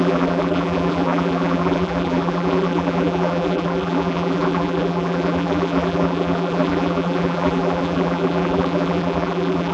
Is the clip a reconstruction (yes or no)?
yes